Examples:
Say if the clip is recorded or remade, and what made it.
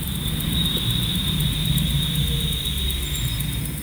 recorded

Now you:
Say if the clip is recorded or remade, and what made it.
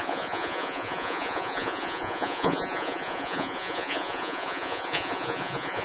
remade, vocoder, Vocos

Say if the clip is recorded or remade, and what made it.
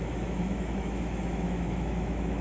remade, autoencoder, DAC-VAE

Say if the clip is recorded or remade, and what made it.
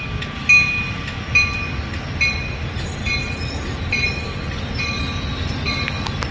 recorded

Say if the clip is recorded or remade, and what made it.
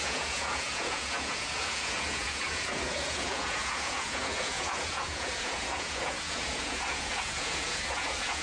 remade, vocoder, Vocos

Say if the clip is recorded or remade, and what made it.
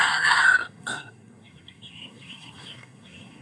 remade, codec, SNAC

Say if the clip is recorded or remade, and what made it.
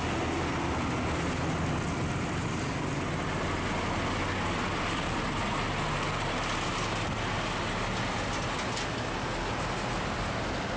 recorded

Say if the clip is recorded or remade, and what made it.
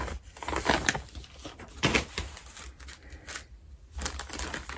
recorded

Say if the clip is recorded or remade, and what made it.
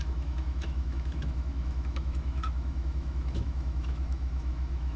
remade, autoencoder, DAC-VAE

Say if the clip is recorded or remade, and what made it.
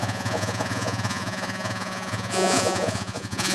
remade, vocoder, Vocos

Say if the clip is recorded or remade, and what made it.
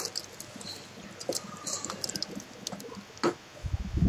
recorded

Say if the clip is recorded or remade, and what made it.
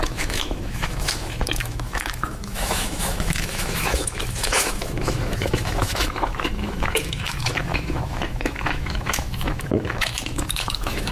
remade, autoencoder, DAC-VAE